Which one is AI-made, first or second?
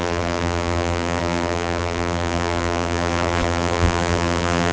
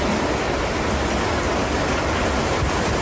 first